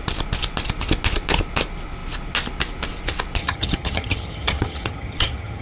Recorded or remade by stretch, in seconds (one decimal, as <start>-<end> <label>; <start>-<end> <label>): 0.0-3.4 recorded; 3.4-5.6 remade